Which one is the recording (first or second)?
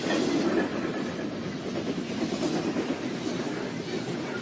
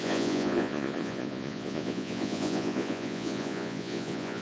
first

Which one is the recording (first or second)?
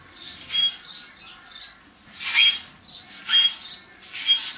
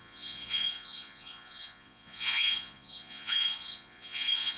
first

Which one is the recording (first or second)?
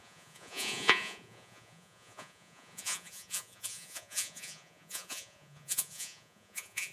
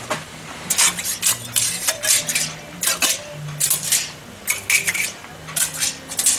second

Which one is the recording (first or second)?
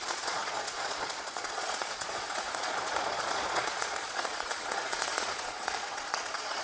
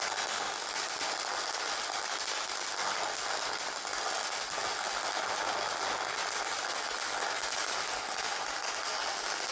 second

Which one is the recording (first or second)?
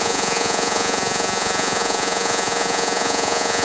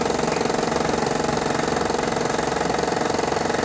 second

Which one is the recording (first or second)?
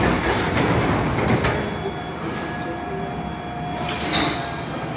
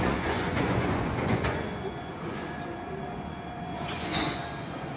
first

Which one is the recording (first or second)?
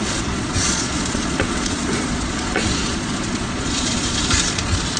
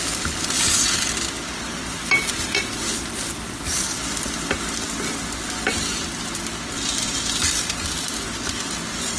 second